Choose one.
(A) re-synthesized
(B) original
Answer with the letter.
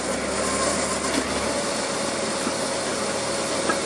B